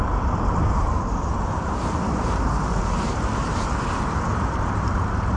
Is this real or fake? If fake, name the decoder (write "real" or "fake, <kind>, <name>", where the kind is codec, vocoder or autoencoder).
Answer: fake, vocoder, BigVGAN v2